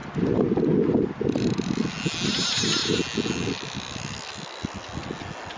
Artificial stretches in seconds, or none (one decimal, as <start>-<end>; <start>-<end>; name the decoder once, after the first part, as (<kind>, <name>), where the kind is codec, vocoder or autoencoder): none